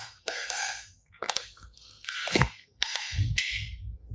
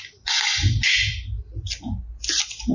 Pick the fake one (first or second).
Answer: first